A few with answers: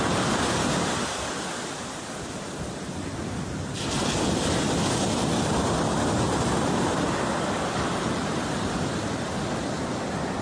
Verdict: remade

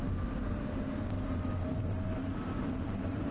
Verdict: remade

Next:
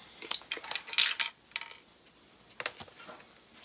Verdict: recorded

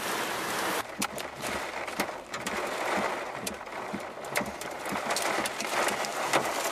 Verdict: recorded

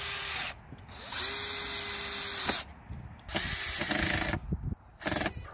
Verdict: recorded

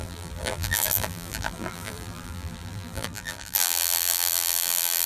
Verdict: remade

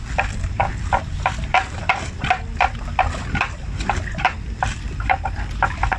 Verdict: remade